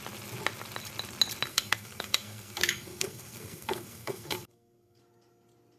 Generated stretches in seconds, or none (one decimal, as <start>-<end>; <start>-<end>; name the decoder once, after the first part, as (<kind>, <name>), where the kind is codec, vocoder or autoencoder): 1.5-5.0 (codec, SNAC)